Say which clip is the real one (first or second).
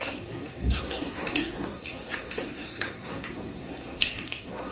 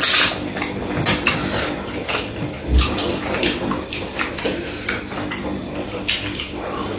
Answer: second